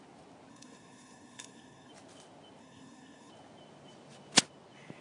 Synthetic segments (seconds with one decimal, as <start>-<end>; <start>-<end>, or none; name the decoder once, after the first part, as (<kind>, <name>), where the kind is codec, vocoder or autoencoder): 0.5-1.9 (codec, SNAC); 2.6-3.3